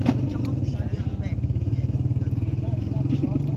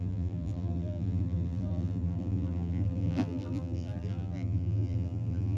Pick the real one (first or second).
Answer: first